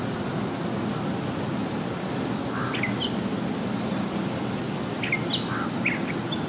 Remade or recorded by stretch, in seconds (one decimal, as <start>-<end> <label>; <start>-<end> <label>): 0.0-6.5 recorded